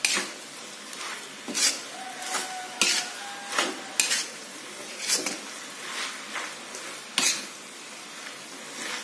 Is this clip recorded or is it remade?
recorded